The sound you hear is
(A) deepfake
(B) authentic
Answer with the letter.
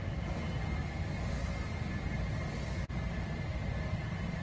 B